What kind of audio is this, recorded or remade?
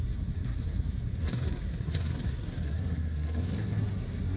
remade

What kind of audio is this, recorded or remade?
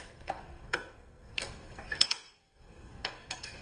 remade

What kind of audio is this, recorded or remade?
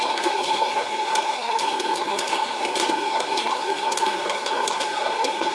remade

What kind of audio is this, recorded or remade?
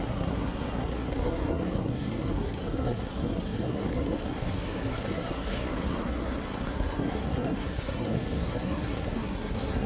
remade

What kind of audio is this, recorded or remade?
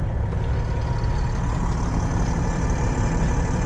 recorded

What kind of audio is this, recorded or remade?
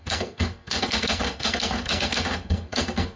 remade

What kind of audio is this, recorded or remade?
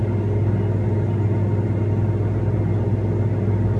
recorded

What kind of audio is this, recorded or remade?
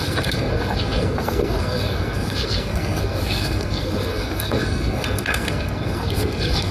remade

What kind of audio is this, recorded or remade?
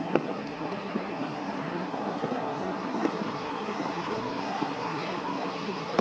remade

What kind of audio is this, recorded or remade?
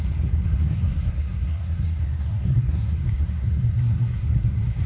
remade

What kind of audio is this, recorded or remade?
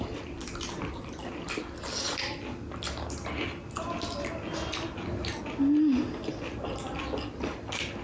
recorded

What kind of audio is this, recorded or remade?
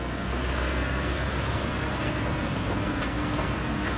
remade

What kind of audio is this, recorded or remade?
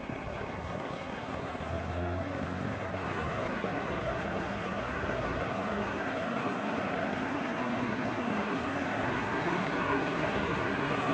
remade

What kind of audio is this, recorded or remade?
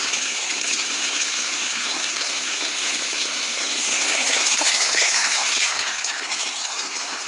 remade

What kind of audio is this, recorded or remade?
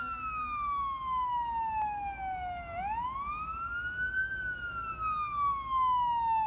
recorded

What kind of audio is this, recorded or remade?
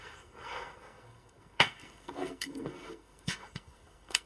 remade